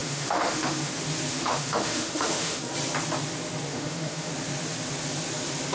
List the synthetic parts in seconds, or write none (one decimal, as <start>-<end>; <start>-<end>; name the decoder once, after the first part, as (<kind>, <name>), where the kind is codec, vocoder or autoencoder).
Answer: 0.0-0.9 (autoencoder, DAC-VAE); 1.3-2.6; 3.7-4.3